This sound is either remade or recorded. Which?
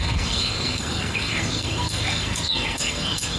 remade